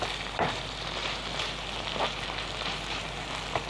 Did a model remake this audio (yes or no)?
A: yes